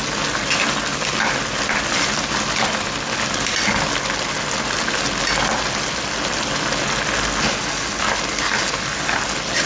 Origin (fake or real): real